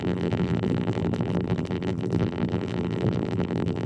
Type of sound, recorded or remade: remade